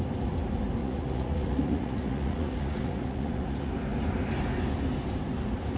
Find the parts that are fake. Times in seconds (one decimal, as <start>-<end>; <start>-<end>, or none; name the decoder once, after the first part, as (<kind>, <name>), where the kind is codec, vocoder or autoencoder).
0.8-3.7 (vocoder, Vocos)